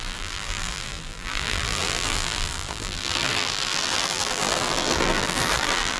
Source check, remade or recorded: remade